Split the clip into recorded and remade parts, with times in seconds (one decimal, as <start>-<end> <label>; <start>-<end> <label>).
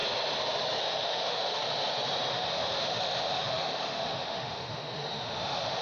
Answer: 0.0-0.8 recorded; 0.8-1.6 remade; 1.6-2.3 recorded; 2.3-5.8 remade